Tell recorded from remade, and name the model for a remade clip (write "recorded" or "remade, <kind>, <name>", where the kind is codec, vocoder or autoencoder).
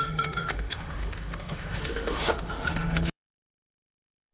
remade, autoencoder, DAC-VAE